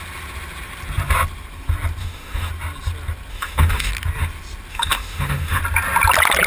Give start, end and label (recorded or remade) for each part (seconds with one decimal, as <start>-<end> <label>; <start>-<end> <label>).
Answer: 0.0-2.0 recorded; 2.0-2.5 remade; 2.5-3.3 recorded; 3.3-3.9 remade; 3.9-4.7 recorded; 4.7-5.6 remade; 5.6-6.5 recorded